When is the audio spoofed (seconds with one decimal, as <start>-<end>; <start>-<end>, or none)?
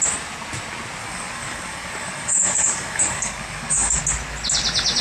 1.0-4.0